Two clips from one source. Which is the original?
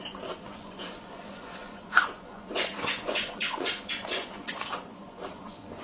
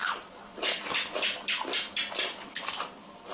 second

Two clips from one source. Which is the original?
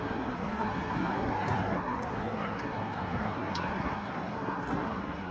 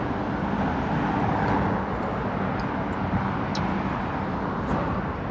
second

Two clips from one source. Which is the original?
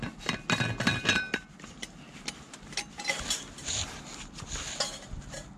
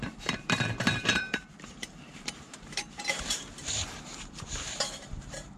first